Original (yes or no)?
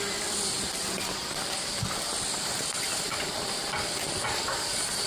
no